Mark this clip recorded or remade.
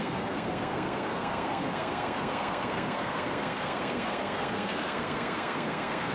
remade